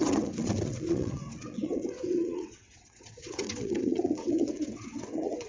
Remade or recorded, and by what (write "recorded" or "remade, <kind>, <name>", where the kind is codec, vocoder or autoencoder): remade, vocoder, WaveNeXt